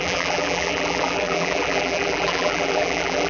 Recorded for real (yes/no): no